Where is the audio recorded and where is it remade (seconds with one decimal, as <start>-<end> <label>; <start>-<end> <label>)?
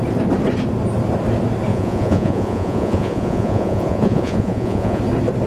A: 0.0-1.7 recorded; 1.7-5.0 remade; 5.0-5.5 recorded